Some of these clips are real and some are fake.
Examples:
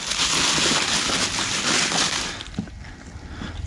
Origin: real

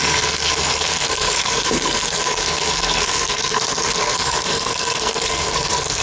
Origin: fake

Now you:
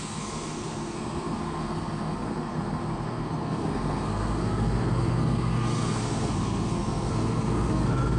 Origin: fake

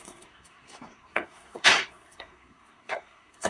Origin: fake